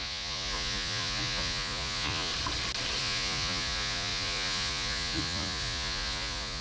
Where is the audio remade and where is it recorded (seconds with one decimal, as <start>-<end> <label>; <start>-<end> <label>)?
0.0-2.3 remade; 2.3-3.0 recorded; 3.0-6.6 remade